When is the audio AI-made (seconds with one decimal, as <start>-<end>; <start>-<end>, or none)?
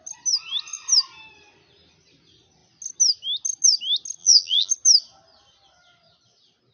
4.2-4.7